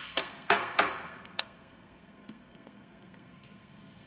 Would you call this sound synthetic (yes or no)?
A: yes